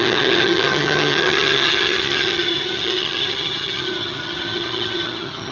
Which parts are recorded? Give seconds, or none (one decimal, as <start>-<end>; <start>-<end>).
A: none